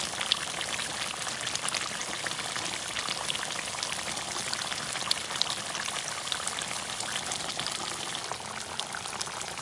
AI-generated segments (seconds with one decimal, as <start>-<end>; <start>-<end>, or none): none